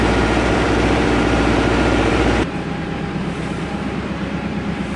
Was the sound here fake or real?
fake